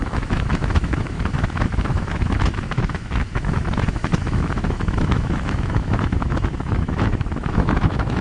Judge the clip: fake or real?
fake